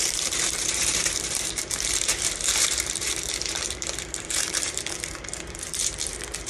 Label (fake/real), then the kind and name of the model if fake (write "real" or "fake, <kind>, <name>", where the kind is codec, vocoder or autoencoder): fake, vocoder, BigVGAN v2